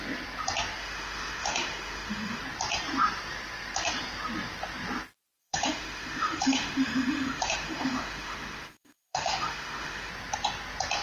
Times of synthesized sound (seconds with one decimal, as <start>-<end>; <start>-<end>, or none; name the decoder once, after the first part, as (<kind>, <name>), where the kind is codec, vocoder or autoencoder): 0.8-2.4 (autoencoder, DAC-VAE); 5.4-10.1